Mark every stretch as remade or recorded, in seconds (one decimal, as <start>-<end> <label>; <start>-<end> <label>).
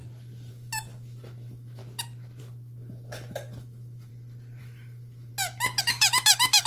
0.0-0.5 recorded; 0.5-1.8 remade; 1.8-2.4 recorded; 2.4-4.1 remade; 4.1-4.6 recorded; 4.6-5.3 remade; 5.3-5.8 recorded; 5.8-6.7 remade